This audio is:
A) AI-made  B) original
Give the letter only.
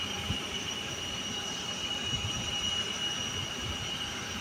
B